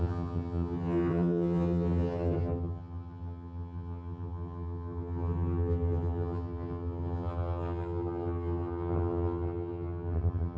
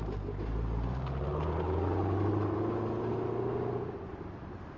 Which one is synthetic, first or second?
first